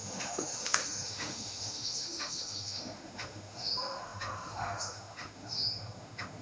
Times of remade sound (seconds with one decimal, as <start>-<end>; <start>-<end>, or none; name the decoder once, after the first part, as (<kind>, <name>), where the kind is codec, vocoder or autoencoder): 0.0-6.4 (autoencoder, DAC-VAE)

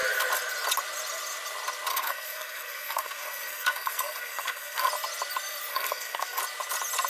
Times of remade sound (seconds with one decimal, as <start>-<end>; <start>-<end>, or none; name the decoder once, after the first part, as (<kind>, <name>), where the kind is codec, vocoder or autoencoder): 1.9-4.9 (codec, SNAC); 5.7-6.4

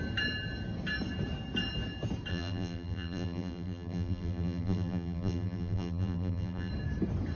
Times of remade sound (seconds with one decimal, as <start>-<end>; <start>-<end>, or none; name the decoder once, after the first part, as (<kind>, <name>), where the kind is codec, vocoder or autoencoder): 2.3-6.7 (vocoder, BigVGAN v2)

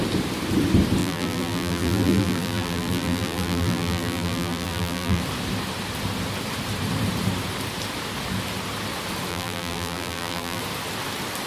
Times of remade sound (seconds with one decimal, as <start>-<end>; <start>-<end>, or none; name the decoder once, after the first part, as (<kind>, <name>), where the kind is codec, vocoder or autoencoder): 1.0-5.2 (vocoder, BigVGAN v2); 9.3-10.6

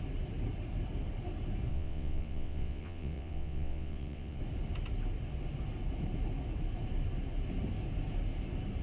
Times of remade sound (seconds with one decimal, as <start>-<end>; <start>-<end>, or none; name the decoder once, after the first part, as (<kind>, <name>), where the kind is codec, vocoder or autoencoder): 1.7-4.4 (vocoder, WaveNeXt)